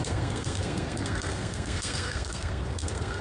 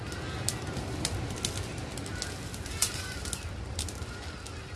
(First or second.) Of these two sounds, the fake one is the first